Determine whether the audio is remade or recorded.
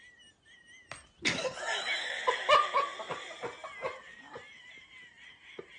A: recorded